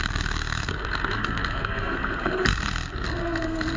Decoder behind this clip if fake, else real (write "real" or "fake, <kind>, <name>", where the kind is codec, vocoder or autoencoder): fake, codec, SNAC